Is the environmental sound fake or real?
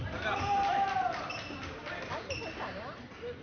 real